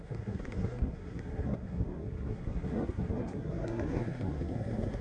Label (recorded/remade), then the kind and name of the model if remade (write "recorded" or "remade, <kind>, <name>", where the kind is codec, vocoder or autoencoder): remade, codec, SNAC